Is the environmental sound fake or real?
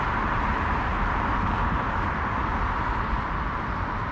real